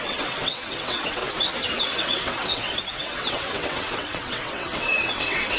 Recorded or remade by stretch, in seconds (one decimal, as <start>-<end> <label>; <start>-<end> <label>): 0.0-1.2 remade; 1.2-1.8 recorded; 1.8-5.6 remade